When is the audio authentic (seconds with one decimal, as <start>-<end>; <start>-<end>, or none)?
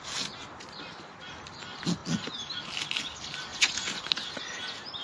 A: 0.0-3.5; 4.0-5.0